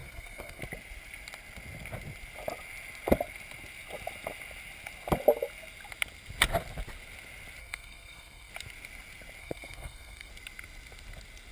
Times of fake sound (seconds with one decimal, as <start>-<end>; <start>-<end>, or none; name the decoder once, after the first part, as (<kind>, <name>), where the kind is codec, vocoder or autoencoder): 0.0-0.6 (codec, SNAC); 7.6-8.5; 9.4-10.3